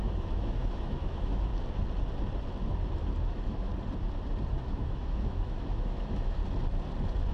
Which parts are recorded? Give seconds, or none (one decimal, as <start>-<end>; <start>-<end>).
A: 1.5-3.3; 3.7-4.5; 6.4-7.3